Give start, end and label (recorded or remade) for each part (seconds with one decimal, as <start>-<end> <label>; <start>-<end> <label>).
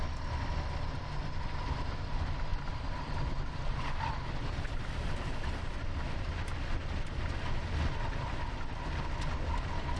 0.0-10.0 recorded